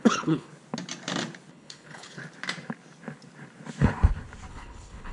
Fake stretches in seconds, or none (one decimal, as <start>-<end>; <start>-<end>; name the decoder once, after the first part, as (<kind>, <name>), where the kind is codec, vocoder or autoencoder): 0.0-0.5 (codec, HILCodec); 1.5-2.2; 4.5-5.1